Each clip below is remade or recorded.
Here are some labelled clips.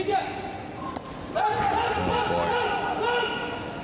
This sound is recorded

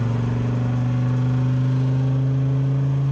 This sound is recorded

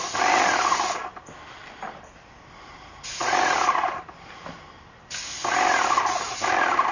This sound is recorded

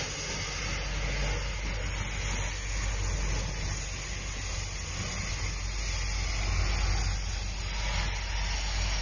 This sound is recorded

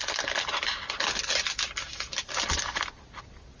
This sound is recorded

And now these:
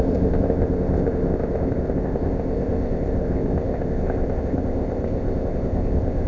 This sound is remade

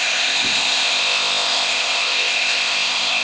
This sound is remade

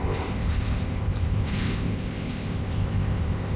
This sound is remade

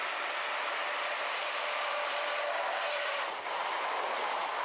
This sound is recorded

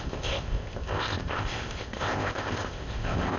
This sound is remade